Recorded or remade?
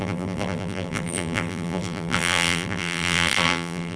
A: remade